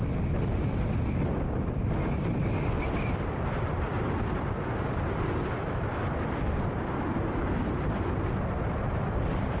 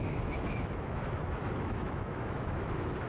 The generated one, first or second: second